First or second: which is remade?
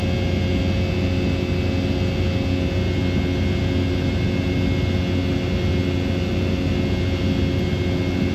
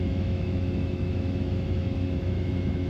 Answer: second